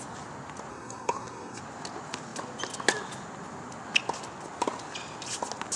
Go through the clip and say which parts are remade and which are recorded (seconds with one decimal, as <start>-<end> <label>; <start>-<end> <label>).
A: 0.0-0.7 recorded; 0.7-1.6 remade; 1.6-5.8 recorded